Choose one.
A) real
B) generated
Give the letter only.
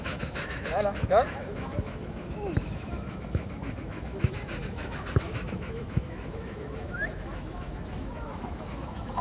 B